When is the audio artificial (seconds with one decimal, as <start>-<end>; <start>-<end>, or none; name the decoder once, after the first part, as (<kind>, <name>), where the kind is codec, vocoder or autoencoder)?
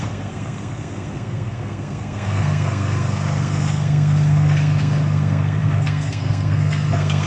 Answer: 0.0-7.3 (codec, SNAC)